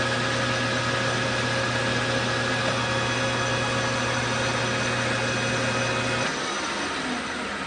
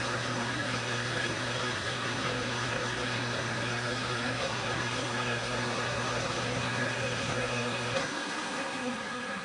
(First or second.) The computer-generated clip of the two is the second